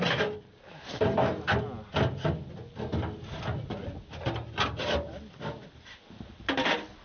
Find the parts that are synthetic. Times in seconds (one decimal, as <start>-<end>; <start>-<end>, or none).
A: none